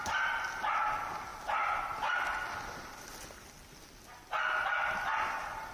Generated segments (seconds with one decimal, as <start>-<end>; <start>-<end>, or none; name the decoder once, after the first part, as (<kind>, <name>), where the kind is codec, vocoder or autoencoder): none